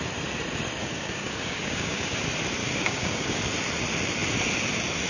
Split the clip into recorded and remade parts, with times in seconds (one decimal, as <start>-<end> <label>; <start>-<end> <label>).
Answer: 0.0-0.8 recorded; 0.8-2.2 remade; 2.2-2.6 recorded; 2.6-3.4 remade; 3.4-5.1 recorded